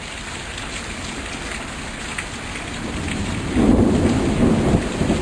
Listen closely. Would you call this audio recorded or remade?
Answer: recorded